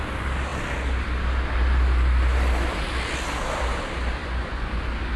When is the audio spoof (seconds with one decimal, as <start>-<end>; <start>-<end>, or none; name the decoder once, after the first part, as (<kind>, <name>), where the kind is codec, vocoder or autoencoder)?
4.2-4.8 (vocoder, Vocos)

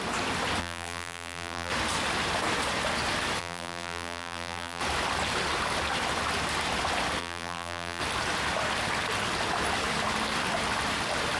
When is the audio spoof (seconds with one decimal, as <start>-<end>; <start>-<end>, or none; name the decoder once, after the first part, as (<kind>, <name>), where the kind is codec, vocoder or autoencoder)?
0.6-1.7 (vocoder, BigVGAN v2); 3.4-4.8; 7.2-8.0

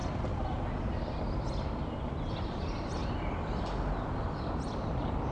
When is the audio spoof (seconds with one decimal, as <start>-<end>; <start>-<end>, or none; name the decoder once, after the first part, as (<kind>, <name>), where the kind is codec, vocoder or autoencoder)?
none

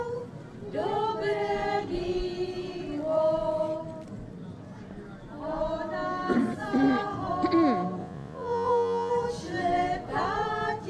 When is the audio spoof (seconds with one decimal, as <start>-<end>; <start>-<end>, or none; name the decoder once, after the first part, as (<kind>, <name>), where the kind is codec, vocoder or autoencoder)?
8.0-9.1 (vocoder, Vocos)

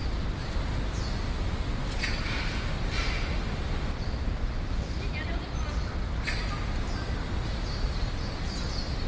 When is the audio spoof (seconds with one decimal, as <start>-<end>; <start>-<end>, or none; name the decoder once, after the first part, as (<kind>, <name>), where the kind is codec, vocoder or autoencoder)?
none

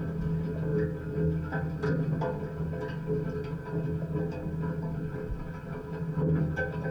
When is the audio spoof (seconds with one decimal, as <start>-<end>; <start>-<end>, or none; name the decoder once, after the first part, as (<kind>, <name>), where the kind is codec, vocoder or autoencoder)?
none

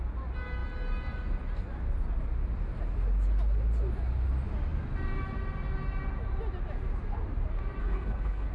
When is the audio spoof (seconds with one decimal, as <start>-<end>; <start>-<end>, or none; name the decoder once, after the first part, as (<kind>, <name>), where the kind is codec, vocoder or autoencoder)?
7.8-8.5 (codec, HILCodec)

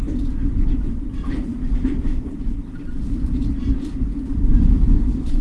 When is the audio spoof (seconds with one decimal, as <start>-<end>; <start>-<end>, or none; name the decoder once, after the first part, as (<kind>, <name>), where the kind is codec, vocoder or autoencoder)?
1.5-4.7 (vocoder, BigVGAN v2)